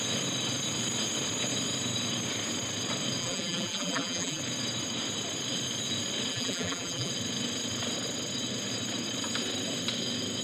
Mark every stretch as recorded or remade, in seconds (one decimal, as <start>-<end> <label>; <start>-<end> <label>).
0.0-3.2 recorded; 3.2-4.4 remade; 4.4-6.3 recorded; 6.3-7.1 remade; 7.1-10.4 recorded